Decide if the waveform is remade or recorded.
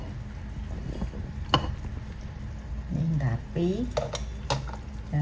recorded